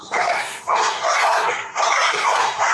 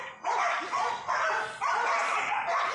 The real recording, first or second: second